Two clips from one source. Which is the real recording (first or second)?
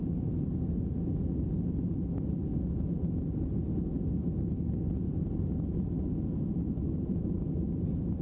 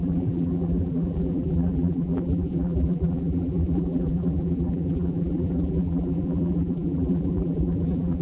first